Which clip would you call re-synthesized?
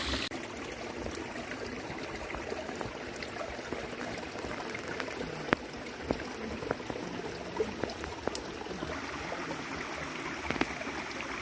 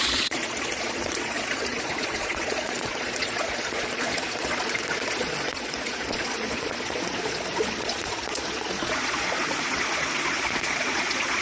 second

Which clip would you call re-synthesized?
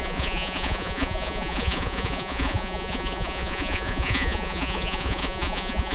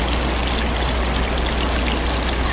first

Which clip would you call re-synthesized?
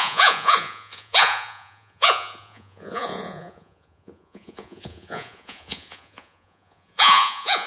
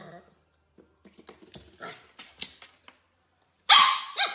first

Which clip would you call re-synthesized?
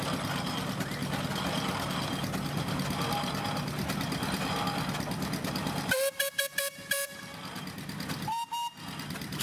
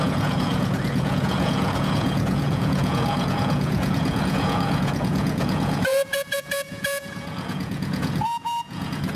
second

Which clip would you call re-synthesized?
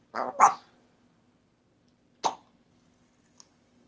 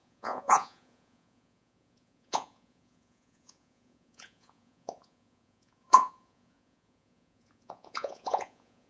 second